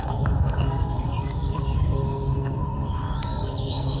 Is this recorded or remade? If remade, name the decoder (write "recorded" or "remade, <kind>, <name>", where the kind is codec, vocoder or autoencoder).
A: remade, codec, SNAC